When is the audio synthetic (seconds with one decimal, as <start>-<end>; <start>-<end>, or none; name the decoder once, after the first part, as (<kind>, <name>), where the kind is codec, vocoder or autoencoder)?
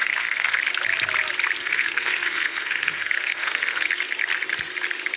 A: 0.0-0.6 (codec, SNAC); 1.6-3.9